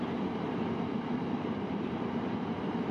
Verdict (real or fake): fake